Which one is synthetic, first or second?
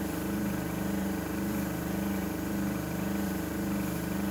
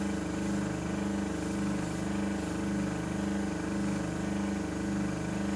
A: first